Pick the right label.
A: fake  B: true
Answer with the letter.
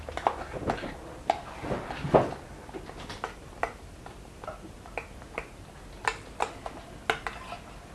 B